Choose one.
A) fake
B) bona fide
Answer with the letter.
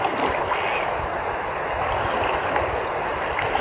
B